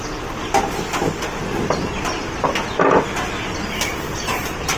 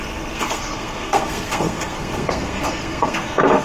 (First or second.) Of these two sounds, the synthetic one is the second